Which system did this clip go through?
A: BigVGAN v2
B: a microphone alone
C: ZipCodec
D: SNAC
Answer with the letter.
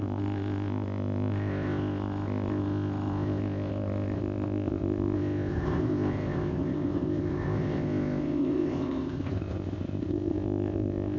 C